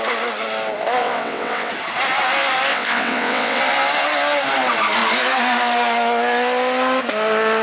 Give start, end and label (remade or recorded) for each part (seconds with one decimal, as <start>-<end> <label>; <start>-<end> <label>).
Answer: 0.0-1.0 recorded; 1.0-1.7 remade; 1.7-2.7 recorded; 2.7-3.6 remade; 3.6-7.6 recorded